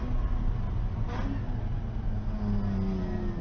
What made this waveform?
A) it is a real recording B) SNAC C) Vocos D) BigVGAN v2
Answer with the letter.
A